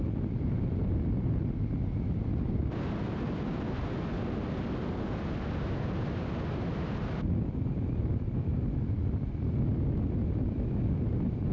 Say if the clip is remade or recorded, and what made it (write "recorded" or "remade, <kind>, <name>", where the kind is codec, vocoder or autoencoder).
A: recorded